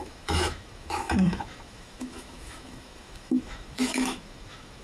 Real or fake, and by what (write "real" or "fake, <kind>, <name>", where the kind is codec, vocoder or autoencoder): fake, autoencoder, DAC-VAE